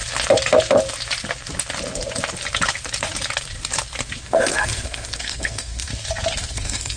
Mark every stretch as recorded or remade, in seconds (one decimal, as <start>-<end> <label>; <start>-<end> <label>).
0.0-4.2 recorded; 4.2-5.9 remade; 5.9-6.4 recorded; 6.4-7.0 remade

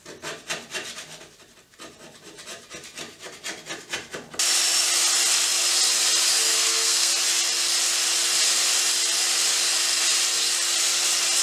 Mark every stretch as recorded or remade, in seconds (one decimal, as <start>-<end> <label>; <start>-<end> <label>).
0.0-6.5 recorded; 6.5-7.1 remade; 7.1-11.4 recorded

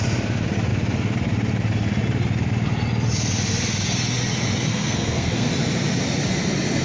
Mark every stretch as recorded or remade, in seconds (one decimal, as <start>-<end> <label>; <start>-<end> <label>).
0.0-4.7 recorded; 4.7-5.5 remade; 5.5-6.8 recorded

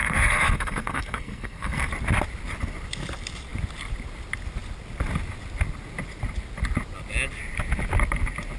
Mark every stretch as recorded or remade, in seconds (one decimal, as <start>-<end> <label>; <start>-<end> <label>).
0.0-1.9 remade; 1.9-8.6 recorded

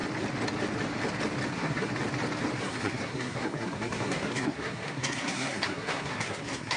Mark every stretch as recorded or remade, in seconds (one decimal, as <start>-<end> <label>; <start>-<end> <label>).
0.0-1.5 recorded; 1.5-1.9 remade; 1.9-2.6 recorded; 2.6-6.8 remade